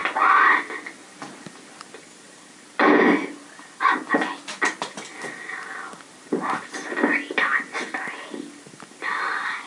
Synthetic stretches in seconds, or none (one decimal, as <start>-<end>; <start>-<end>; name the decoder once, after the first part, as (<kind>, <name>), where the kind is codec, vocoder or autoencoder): none